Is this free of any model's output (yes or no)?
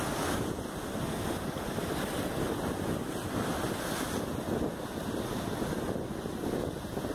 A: yes